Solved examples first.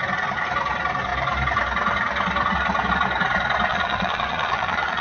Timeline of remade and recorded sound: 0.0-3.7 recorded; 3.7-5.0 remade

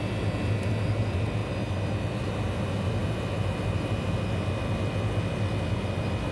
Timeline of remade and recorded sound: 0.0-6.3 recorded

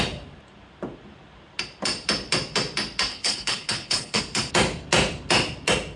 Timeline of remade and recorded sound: 0.0-3.1 recorded; 3.1-4.2 remade; 4.2-6.0 recorded

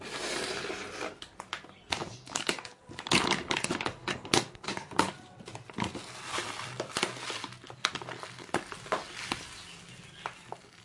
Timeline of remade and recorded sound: 0.0-2.0 recorded; 2.0-5.1 remade; 5.1-10.8 recorded